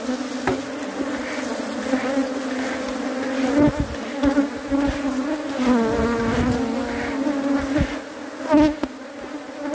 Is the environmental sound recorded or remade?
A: recorded